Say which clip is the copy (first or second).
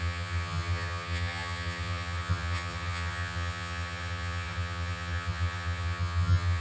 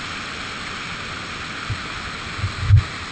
first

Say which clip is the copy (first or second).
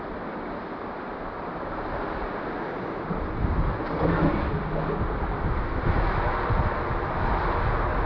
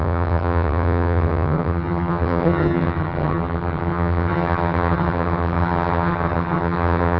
second